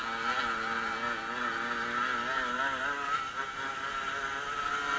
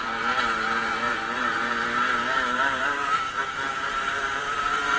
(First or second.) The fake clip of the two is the second